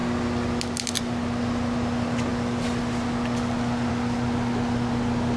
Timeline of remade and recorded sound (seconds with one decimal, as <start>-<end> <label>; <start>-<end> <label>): 0.0-5.4 recorded